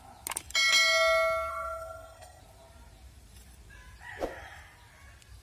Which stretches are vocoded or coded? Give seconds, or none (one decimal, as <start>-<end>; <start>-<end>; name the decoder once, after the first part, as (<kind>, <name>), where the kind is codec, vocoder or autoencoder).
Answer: 1.5-2.4 (codec, SNAC)